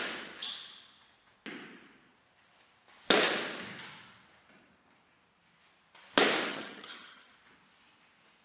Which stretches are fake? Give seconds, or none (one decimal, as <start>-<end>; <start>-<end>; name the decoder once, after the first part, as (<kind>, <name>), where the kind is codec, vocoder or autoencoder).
6.5-7.3 (vocoder, HiFi-GAN)